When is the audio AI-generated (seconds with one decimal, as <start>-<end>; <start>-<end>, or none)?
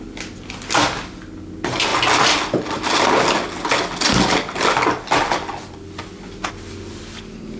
none